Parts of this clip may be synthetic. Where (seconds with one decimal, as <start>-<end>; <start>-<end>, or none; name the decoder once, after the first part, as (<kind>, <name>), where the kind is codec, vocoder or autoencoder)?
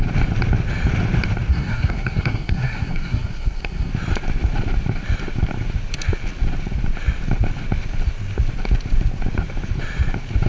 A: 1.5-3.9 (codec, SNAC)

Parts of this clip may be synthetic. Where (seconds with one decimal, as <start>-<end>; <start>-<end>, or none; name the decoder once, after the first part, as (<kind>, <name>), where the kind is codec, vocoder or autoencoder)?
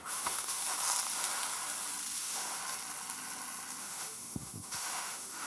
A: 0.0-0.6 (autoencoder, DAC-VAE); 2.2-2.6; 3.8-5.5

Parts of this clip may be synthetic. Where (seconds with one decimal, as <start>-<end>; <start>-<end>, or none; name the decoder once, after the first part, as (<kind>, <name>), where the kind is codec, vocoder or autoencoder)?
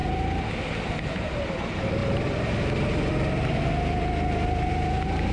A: none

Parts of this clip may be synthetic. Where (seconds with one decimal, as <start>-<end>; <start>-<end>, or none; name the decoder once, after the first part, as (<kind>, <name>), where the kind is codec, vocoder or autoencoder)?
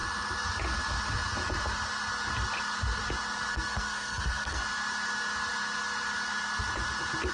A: 3.5-4.6 (codec, SNAC)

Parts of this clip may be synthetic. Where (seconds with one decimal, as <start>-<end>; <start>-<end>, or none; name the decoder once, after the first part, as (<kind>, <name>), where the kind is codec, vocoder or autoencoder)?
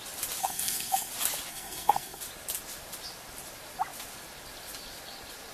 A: 0.4-1.1 (codec, SNAC); 1.5-2.2